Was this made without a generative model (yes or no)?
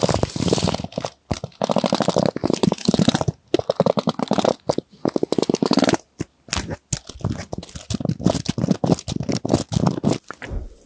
yes